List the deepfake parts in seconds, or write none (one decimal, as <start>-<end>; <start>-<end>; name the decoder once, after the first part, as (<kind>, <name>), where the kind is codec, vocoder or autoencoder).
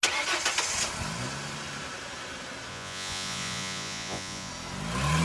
2.7-4.5 (vocoder, Vocos)